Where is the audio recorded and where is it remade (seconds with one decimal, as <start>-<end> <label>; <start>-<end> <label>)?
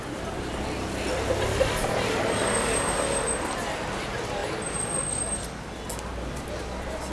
0.0-7.1 recorded